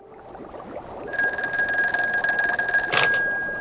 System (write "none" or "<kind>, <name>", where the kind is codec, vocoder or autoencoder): none